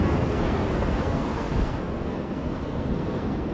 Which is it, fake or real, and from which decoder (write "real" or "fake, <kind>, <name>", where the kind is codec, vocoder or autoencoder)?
fake, codec, SNAC